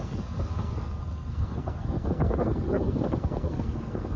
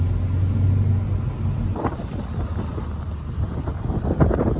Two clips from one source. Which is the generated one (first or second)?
first